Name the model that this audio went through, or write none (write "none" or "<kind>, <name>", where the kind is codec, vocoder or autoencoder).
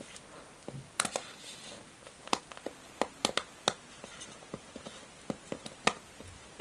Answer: none